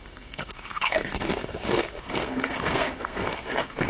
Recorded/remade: remade